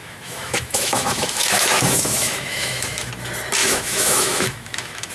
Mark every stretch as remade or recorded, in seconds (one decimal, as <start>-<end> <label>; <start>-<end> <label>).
0.0-3.1 remade; 3.1-3.6 recorded; 3.6-5.1 remade